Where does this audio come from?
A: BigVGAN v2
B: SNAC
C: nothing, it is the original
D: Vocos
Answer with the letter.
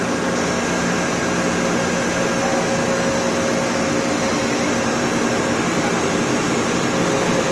C